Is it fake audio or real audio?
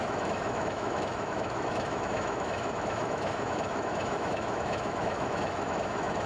fake